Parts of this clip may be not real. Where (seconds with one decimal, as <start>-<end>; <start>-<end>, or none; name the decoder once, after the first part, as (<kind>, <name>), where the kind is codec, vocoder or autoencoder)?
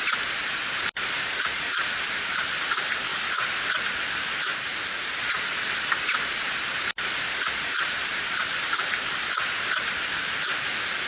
3.1-3.6 (vocoder, BigVGAN v2); 4.5-5.2